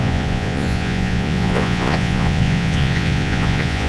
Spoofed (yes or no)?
yes